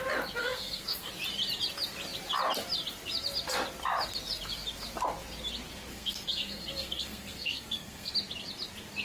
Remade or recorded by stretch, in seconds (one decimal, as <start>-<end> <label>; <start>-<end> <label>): 0.0-0.4 recorded; 0.4-1.1 remade; 1.1-5.9 recorded; 5.9-8.1 remade; 8.1-9.0 recorded